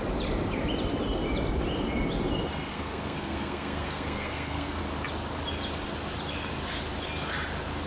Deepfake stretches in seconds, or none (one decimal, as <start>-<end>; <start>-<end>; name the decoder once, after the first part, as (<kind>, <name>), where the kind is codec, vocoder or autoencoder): 2.7-4.8 (codec, SNAC)

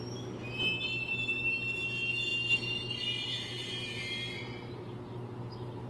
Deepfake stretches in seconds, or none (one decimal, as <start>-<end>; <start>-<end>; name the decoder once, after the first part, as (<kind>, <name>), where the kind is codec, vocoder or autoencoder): none